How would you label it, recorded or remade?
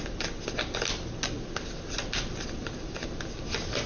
recorded